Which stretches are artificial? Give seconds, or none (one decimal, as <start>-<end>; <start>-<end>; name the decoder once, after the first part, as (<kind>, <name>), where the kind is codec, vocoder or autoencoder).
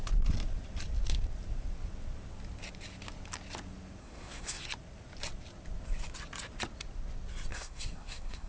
4.0-4.6 (codec, SNAC); 7.5-8.5